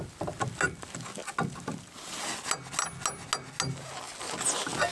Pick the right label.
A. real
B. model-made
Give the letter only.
A